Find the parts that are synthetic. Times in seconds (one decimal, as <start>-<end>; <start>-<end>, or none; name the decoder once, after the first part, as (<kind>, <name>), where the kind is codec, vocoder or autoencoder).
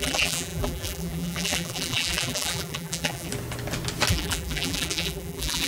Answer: 0.0-3.3 (vocoder, BigVGAN v2); 4.1-5.7